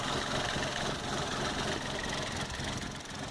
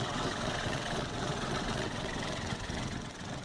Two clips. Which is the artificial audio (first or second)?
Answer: second